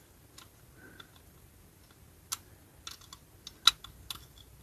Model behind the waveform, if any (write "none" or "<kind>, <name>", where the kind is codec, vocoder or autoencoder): none